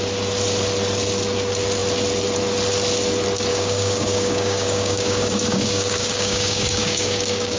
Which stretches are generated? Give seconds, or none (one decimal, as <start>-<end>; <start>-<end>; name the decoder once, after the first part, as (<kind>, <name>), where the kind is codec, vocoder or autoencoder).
3.5-7.6 (codec, DAC)